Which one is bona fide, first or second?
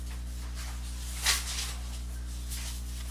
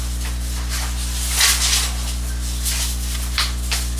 first